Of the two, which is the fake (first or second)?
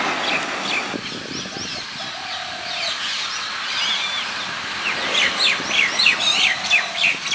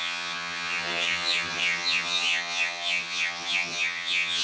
second